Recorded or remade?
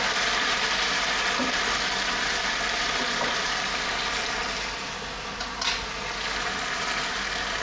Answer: recorded